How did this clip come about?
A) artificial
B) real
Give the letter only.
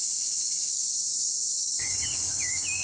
A